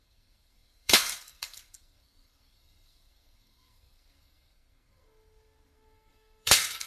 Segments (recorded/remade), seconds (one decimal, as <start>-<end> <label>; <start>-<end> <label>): 0.0-6.9 remade